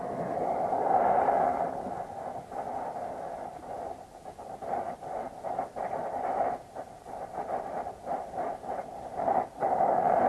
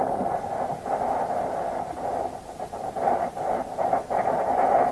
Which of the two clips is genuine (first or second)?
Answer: second